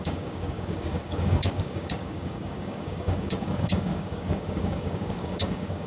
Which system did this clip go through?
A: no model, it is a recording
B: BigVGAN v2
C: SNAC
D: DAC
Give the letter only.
D